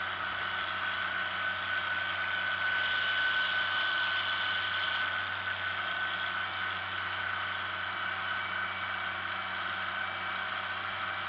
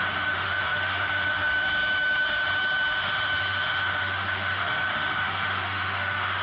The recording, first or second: first